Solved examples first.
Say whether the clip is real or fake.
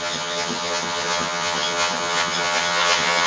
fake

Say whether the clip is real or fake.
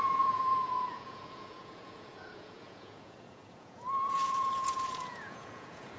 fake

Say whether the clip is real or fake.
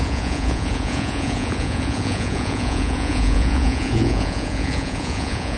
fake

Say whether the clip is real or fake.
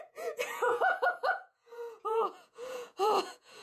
fake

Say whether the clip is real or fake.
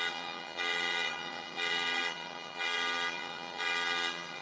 fake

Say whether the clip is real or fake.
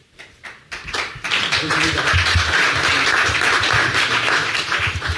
fake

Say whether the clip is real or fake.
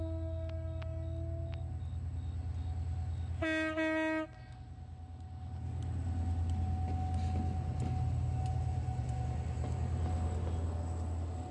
real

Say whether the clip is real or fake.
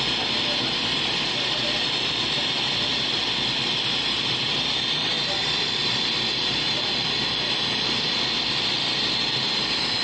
real